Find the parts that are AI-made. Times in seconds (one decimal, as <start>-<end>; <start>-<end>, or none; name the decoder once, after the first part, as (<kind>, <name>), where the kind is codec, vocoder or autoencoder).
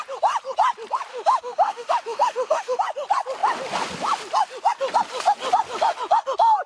1.1-2.8 (autoencoder, DAC-VAE)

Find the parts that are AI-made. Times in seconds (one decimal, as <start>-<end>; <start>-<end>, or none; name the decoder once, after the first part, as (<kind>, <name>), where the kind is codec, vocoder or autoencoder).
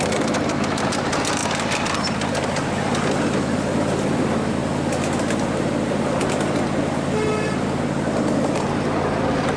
none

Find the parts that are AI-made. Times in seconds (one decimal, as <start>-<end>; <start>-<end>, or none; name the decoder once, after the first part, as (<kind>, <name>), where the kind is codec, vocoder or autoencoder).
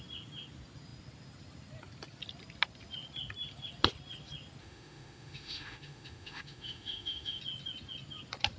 4.6-7.4 (autoencoder, DAC-VAE)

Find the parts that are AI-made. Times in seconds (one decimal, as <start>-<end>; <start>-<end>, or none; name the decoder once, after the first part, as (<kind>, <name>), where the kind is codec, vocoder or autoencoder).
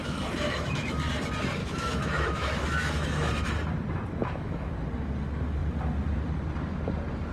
0.0-1.1 (autoencoder, DAC-VAE); 1.6-3.3; 4.2-4.7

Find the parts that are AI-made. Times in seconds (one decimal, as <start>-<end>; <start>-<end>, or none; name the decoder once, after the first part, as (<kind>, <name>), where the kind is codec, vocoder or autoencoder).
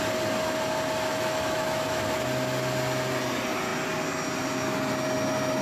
1.1-2.0 (autoencoder, DAC-VAE)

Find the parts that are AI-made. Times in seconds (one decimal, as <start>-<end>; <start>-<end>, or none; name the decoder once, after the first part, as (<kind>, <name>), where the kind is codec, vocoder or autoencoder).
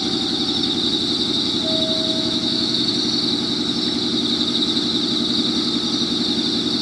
2.1-2.9 (autoencoder, DAC-VAE)